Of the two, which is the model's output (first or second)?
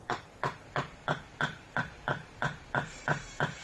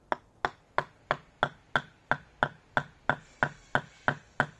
first